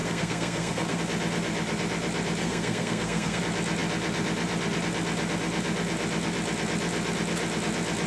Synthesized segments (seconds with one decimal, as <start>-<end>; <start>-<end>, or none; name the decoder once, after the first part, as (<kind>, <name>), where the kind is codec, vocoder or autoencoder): 0.0-1.0 (codec, SNAC); 2.4-3.4